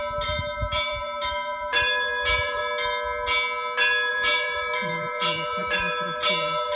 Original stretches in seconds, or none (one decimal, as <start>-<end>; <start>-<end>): 2.6-4.1